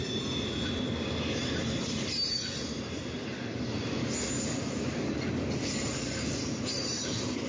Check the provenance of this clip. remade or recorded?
recorded